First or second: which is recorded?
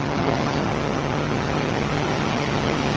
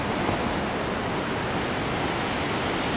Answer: second